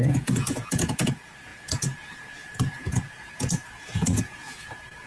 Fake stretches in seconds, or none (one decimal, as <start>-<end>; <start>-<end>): 0.0-5.1